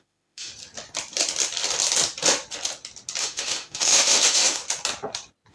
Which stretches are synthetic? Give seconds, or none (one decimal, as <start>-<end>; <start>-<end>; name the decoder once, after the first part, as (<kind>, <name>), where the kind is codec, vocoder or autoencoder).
0.0-0.5 (autoencoder, DAC-VAE); 3.2-4.6